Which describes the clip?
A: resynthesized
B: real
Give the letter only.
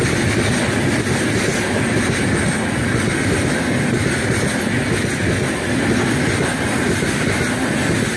B